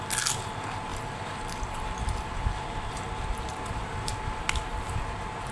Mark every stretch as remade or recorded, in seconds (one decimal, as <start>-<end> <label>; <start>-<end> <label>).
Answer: 0.0-0.9 recorded; 0.9-4.2 remade; 4.2-5.5 recorded